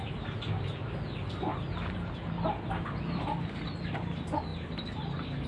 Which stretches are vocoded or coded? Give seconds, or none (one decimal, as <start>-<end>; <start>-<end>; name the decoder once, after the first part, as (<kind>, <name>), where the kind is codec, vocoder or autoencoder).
1.5-2.4 (vocoder, BigVGAN v2)